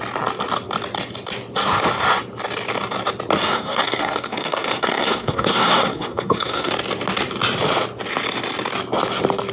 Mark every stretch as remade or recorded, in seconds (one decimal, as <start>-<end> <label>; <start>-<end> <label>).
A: 0.0-3.5 recorded; 3.5-6.7 remade; 6.7-9.5 recorded